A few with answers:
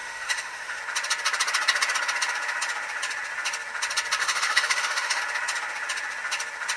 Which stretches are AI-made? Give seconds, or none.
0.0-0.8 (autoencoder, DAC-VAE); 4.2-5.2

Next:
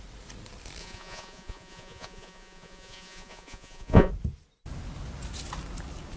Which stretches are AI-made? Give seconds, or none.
0.8-4.1 (vocoder, Vocos)

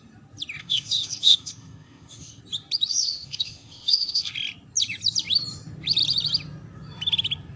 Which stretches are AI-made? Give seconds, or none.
0.6-2.4 (codec, ZipCodec); 2.9-4.3

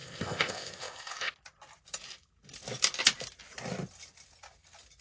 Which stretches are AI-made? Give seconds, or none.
0.0-1.3 (codec, ZipCodec)

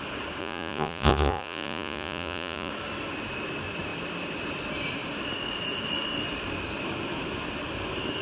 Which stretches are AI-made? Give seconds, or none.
0.4-2.7 (vocoder, Vocos)

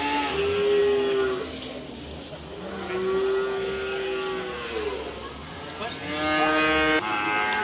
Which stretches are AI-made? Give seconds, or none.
none